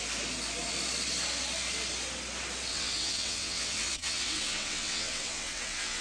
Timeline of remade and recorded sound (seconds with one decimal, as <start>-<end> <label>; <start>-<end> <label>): 0.0-2.7 recorded; 2.7-6.0 remade